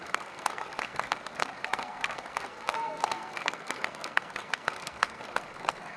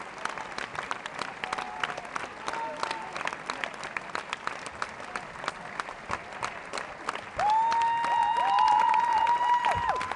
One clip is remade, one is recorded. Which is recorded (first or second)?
second